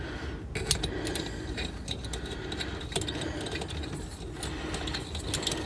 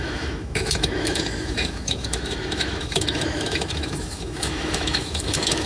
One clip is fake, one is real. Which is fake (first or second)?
second